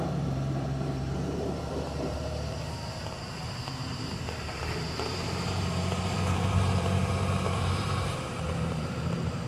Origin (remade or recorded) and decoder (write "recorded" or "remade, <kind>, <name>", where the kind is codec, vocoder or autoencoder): remade, vocoder, BigVGAN v2